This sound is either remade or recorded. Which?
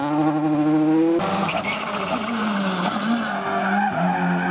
recorded